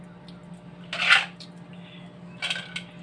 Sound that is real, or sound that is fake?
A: real